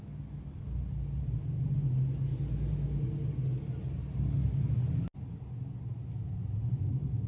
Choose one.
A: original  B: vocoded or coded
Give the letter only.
A